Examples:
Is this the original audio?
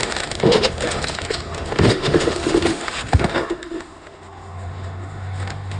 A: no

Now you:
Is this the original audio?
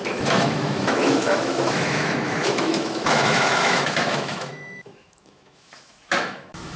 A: no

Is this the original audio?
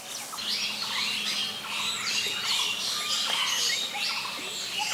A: yes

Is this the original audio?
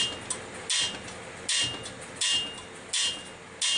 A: yes